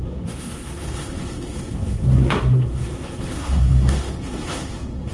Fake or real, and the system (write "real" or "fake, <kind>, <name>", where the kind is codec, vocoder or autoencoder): fake, codec, SNAC